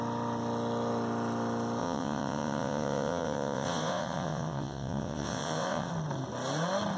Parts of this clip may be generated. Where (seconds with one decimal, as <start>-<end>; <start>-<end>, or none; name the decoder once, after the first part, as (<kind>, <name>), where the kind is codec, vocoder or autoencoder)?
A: 1.8-5.9 (vocoder, WaveNeXt)